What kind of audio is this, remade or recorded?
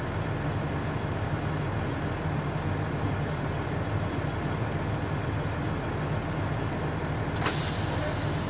recorded